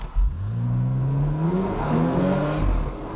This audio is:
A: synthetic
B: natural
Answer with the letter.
A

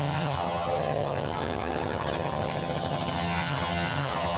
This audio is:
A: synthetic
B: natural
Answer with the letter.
A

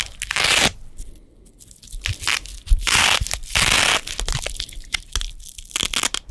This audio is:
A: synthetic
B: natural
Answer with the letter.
B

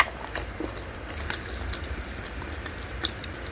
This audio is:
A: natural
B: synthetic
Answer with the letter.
B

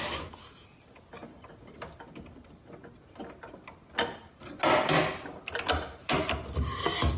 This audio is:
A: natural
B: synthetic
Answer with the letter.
A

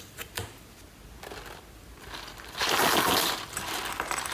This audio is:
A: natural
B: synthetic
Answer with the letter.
A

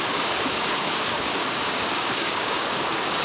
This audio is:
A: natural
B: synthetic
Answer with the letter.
B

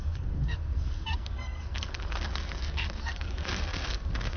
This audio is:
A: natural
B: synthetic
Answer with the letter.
B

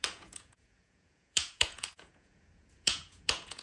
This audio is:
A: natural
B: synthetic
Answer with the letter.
B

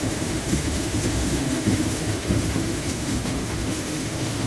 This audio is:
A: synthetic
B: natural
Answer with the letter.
A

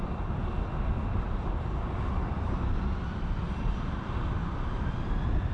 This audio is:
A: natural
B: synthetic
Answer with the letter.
A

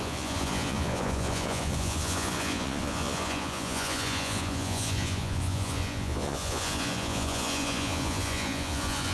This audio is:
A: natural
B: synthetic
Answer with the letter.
B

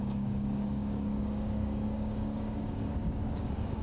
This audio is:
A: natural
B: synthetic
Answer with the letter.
B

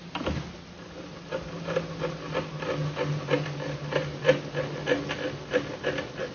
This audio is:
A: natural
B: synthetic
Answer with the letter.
A